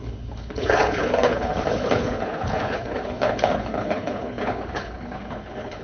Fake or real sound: fake